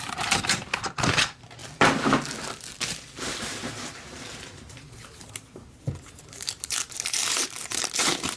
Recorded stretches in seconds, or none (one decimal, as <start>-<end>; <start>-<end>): 1.6-3.2